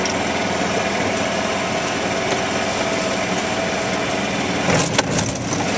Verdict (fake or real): real